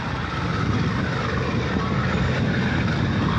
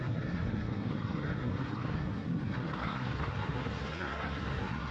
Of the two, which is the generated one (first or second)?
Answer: second